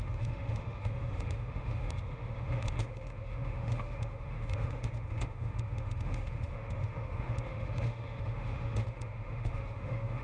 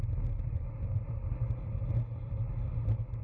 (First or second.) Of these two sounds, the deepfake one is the first